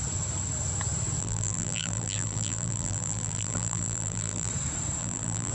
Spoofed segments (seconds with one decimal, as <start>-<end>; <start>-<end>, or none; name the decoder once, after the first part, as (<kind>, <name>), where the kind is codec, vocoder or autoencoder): 1.2-4.5 (vocoder, BigVGAN v2); 5.0-5.5

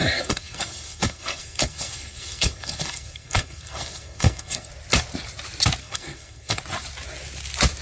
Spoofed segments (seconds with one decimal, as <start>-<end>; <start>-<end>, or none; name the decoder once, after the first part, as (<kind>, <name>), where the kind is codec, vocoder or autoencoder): 0.0-4.7 (codec, SNAC); 5.8-6.6

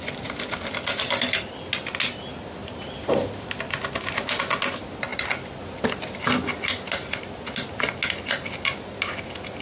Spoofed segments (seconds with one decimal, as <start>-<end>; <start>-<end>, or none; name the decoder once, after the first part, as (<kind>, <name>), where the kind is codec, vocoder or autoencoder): 2.6-3.6 (vocoder, BigVGAN v2); 5.1-5.6

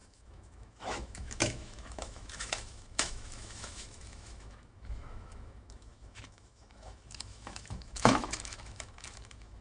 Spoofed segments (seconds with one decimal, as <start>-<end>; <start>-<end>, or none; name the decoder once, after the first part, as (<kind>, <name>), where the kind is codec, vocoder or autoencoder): 0.0-9.6 (autoencoder, DAC-VAE)

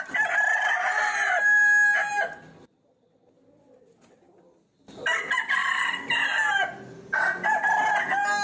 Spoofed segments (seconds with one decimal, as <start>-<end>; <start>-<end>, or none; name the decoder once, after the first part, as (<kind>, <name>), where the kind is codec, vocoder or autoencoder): none